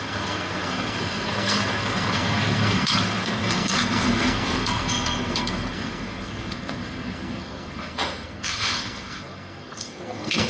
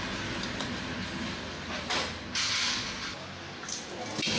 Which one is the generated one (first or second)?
first